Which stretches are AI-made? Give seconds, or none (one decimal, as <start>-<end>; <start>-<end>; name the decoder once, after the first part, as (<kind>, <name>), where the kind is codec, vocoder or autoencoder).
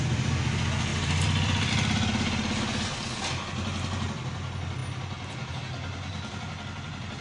0.9-1.7 (vocoder, BigVGAN v2)